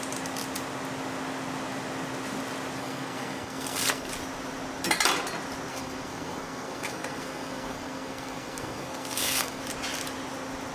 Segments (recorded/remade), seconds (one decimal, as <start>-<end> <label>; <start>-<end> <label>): 0.0-2.8 recorded; 2.8-4.1 remade; 4.1-5.7 recorded; 5.7-9.6 remade; 9.6-10.7 recorded